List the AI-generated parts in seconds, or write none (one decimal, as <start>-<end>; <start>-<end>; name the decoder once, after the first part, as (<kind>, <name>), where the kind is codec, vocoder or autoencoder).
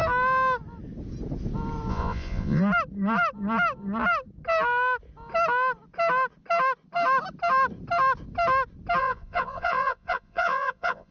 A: 1.9-2.6 (vocoder, Vocos); 9.0-11.1